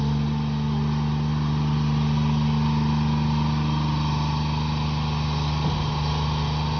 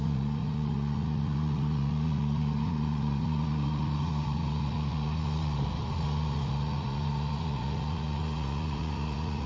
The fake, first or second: second